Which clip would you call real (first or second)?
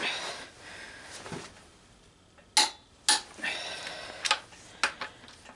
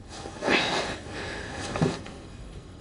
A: first